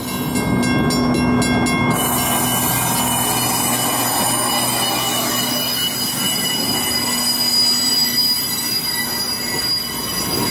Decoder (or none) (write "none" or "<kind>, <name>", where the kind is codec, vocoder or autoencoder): none